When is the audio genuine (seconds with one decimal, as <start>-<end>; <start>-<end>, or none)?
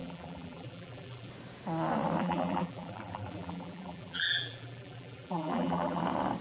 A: 1.3-2.2; 6.0-6.4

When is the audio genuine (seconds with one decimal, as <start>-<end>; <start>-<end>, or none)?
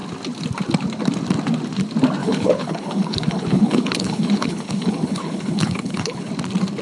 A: 0.0-2.2; 6.3-6.8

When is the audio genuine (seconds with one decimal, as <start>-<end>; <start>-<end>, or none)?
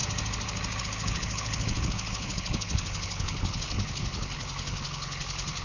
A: 0.0-0.8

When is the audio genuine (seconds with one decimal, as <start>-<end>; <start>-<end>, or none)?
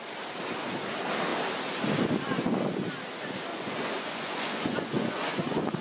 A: 0.0-3.5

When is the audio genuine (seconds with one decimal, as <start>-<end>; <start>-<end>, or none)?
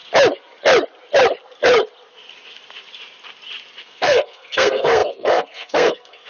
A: 0.0-3.8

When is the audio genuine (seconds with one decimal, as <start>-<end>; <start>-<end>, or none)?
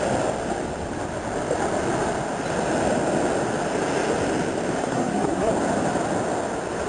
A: 0.0-4.8; 5.5-6.9